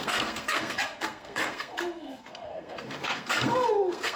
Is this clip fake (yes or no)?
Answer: yes